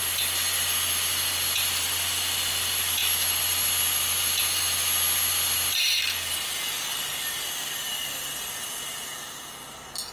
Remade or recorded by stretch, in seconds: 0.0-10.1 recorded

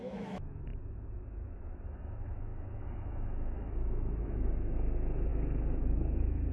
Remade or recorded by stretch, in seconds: 0.0-6.5 remade

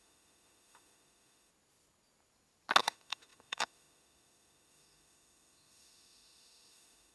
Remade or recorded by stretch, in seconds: 0.0-1.5 remade; 1.5-2.8 recorded; 2.8-7.1 remade

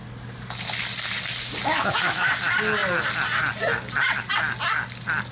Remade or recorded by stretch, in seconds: 0.0-1.7 recorded; 1.7-2.3 remade; 2.3-5.3 recorded

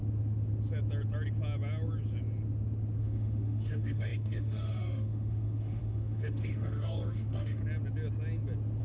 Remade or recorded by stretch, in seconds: 0.0-3.0 recorded; 3.0-7.6 remade; 7.6-8.8 recorded

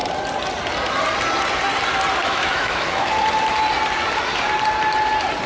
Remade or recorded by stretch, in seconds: 0.0-2.2 recorded; 2.2-3.2 remade; 3.2-5.5 recorded

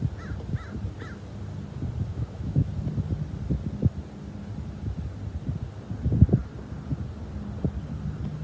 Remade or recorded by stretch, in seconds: 0.0-2.1 recorded; 2.1-2.7 remade; 2.7-8.4 recorded